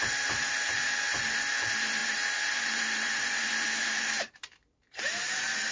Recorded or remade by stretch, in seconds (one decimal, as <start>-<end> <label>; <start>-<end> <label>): 0.0-2.0 recorded; 2.0-5.7 remade